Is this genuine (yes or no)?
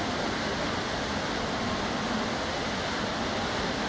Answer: yes